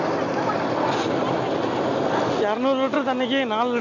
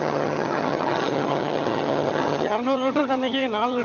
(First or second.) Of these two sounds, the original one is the first